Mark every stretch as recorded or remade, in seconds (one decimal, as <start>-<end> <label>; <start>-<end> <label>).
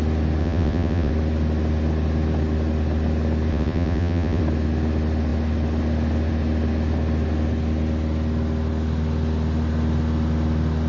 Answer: 0.0-0.4 recorded; 0.4-1.1 remade; 1.1-3.5 recorded; 3.5-4.4 remade; 4.4-10.9 recorded